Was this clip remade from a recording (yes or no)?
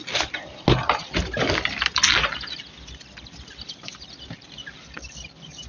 no